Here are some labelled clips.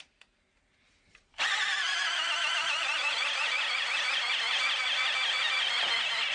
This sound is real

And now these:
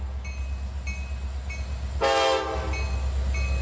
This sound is real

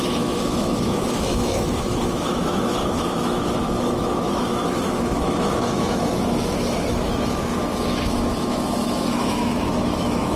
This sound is fake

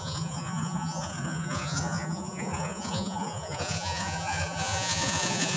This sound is fake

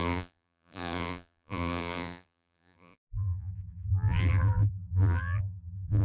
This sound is fake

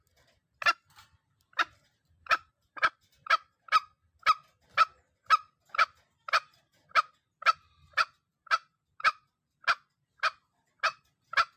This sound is real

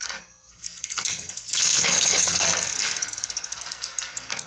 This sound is fake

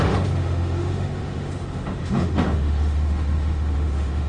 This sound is fake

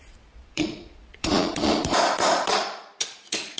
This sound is fake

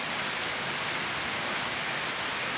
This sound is real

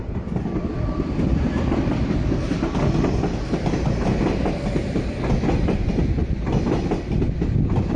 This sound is real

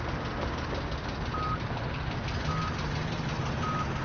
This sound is real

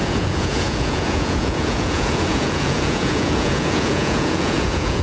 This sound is fake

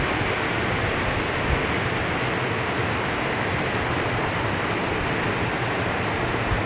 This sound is real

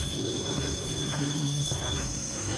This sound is fake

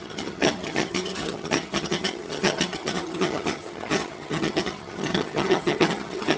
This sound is fake